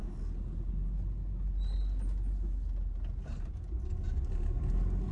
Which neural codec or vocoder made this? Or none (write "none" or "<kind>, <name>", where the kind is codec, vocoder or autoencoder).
none